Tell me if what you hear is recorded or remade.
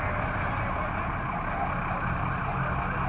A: recorded